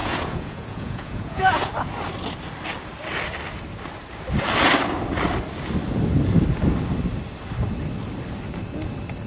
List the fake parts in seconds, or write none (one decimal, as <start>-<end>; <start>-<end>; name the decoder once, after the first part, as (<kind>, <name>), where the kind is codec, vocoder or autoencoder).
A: 0.0-1.7 (vocoder, Vocos)